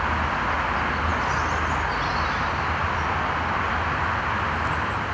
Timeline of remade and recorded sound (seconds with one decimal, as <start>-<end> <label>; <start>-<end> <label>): 0.0-5.1 recorded